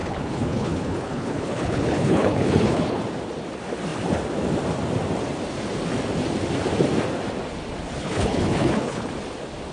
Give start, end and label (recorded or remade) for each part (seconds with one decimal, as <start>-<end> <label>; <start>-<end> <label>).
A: 0.0-3.0 remade; 3.0-8.0 recorded; 8.0-9.1 remade; 9.1-9.7 recorded